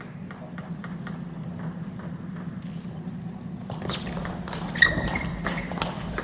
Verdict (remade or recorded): recorded